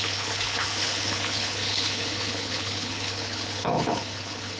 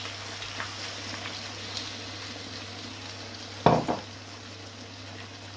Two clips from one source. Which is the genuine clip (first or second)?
second